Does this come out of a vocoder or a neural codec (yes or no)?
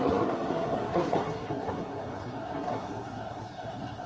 yes